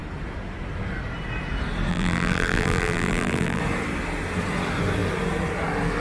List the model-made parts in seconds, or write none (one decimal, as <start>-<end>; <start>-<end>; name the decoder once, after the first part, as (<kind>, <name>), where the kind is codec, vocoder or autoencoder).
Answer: 1.9-3.6 (vocoder, BigVGAN v2)